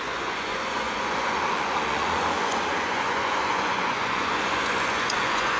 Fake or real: fake